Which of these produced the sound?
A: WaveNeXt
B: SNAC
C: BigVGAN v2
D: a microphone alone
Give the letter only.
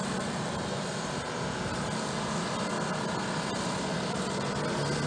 D